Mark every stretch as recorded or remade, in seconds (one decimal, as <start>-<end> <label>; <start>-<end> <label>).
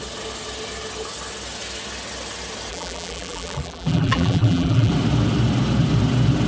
0.0-2.7 recorded; 2.7-4.9 remade; 4.9-6.5 recorded